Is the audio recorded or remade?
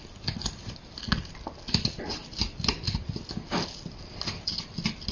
recorded